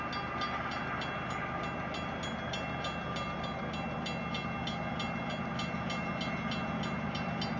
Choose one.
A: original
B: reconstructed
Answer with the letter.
A